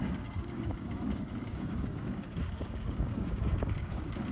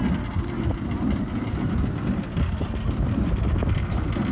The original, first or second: second